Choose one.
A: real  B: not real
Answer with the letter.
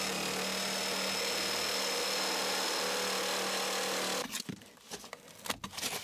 A